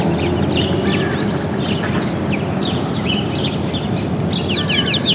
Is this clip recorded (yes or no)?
yes